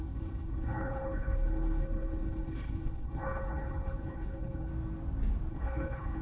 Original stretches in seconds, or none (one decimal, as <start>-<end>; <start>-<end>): 4.7-5.5